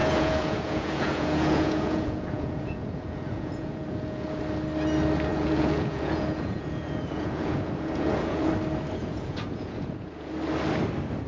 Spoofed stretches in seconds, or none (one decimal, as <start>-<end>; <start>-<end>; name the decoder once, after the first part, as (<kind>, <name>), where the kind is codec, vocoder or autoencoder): 0.0-4.4 (vocoder, Vocos); 5.3-8.5; 9.0-10.3